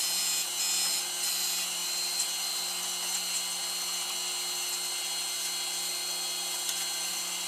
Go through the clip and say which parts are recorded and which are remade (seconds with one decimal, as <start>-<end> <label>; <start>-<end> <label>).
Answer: 0.0-7.5 recorded